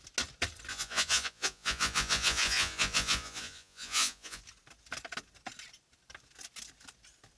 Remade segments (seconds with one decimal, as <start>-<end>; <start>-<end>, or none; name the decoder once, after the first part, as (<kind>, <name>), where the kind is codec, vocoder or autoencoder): 0.7-4.4 (vocoder, Vocos)

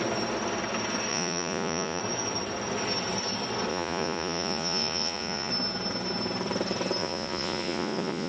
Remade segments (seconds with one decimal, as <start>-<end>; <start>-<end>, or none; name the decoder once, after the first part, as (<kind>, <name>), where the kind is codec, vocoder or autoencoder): 1.1-2.0 (vocoder, Vocos); 3.7-5.5; 7.0-8.3

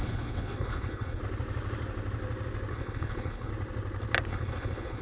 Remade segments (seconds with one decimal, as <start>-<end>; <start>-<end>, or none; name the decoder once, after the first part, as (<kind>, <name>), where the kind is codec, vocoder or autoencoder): 0.0-1.2 (codec, HILCodec); 2.7-3.5; 4.3-5.0

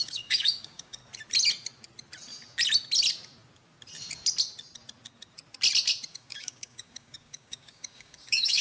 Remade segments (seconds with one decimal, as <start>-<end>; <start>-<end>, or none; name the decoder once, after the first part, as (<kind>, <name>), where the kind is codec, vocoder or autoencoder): 0.0-1.0 (codec, DAC); 6.1-8.6

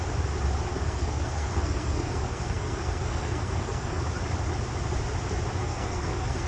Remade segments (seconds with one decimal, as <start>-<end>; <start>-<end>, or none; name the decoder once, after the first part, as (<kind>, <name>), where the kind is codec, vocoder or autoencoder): 0.7-4.0 (codec, SNAC); 5.6-6.5

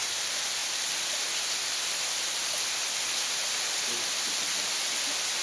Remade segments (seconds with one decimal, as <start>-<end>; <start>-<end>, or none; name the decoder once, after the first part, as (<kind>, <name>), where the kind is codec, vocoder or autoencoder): none

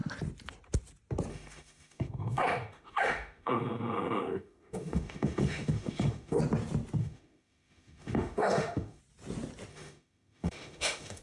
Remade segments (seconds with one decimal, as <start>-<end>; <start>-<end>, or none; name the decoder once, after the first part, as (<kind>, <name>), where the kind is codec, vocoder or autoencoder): 1.3-6.4 (autoencoder, DAC-VAE); 7.0-9.0; 9.7-11.2

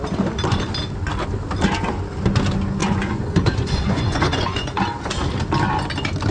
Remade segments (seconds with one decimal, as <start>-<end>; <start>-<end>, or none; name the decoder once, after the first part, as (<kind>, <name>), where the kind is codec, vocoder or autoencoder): 2.8-4.8 (vocoder, Vocos)